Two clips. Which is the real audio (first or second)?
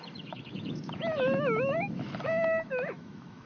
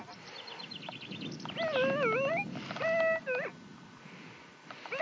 second